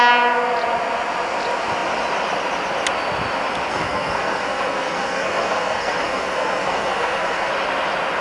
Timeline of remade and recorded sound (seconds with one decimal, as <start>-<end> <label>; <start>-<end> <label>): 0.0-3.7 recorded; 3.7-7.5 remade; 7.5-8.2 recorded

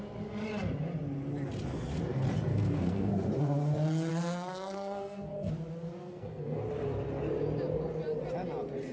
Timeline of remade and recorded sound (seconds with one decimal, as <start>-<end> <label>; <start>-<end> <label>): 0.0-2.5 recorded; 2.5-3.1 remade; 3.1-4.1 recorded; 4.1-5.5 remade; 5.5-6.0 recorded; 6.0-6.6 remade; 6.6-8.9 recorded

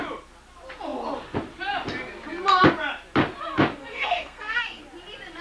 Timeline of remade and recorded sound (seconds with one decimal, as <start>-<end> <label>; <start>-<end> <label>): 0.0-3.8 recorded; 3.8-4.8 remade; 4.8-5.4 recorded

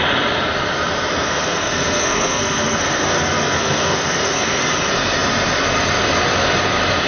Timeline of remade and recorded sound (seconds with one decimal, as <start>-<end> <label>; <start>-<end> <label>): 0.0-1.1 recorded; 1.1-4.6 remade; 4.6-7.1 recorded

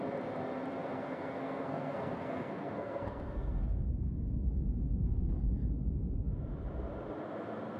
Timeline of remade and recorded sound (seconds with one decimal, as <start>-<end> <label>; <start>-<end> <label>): 0.0-0.8 recorded; 0.8-5.3 remade; 5.3-7.8 recorded

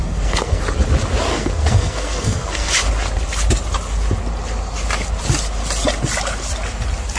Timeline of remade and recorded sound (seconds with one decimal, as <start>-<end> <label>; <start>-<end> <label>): 0.0-0.6 remade; 0.6-1.3 recorded; 1.3-2.7 remade; 2.7-7.2 recorded